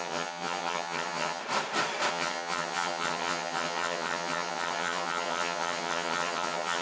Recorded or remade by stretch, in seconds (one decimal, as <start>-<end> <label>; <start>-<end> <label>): 0.0-1.4 remade; 1.4-2.1 recorded; 2.1-6.8 remade